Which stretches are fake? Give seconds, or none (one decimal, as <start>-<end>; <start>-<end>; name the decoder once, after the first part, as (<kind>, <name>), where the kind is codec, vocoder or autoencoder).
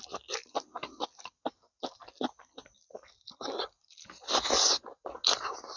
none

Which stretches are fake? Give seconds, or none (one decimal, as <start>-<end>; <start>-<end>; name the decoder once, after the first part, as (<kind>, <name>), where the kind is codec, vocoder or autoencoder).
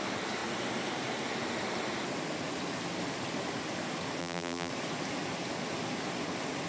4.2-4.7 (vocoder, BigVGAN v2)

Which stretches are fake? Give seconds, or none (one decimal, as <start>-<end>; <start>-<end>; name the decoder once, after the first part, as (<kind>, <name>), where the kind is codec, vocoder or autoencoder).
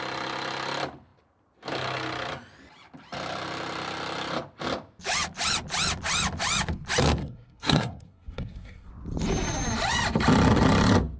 7.2-8.9 (codec, SNAC)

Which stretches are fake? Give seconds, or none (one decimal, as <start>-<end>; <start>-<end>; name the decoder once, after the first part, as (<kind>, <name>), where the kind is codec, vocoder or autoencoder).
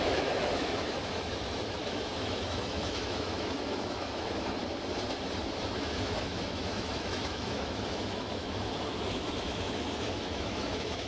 0.0-4.6 (autoencoder, DAC-VAE); 5.6-11.1